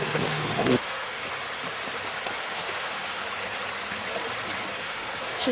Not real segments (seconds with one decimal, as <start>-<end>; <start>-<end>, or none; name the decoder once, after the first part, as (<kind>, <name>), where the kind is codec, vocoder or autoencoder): 0.0-1.2 (autoencoder, DAC-VAE); 2.4-3.2; 4.8-5.5